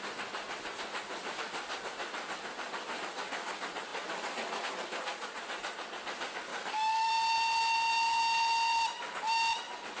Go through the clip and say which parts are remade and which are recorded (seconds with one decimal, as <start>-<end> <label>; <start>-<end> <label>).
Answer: 0.0-6.5 recorded; 6.5-7.1 remade; 7.1-10.0 recorded